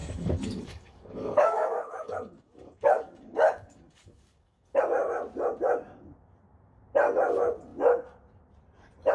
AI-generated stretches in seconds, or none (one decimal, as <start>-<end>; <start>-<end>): 0.0-4.8